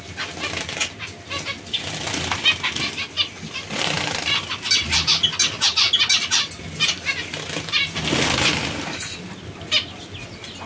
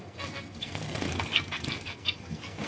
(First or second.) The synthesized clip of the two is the second